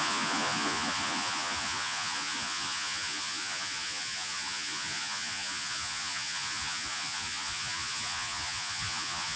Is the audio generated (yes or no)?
yes